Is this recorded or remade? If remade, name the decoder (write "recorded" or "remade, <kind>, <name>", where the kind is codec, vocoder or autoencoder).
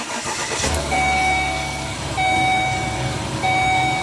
remade, codec, DAC